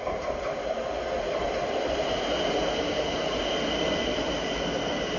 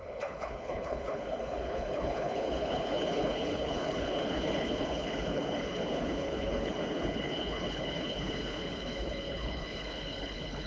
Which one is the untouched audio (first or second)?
first